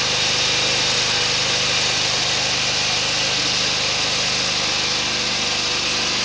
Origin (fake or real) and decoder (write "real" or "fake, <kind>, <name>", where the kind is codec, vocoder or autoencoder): real